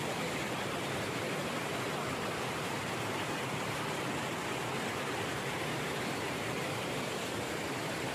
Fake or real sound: fake